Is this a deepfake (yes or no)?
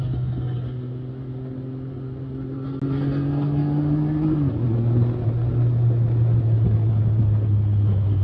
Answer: no